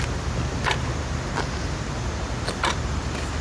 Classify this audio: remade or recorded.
recorded